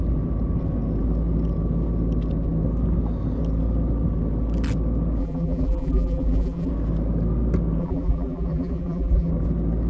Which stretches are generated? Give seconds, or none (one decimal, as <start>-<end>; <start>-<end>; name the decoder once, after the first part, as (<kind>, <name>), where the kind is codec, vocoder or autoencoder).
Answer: 5.2-6.7 (vocoder, BigVGAN v2); 7.8-9.3